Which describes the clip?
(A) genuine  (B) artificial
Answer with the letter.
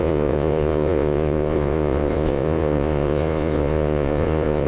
B